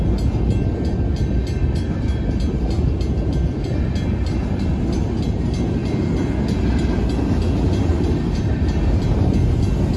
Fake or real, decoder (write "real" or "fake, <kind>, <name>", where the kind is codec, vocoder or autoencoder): real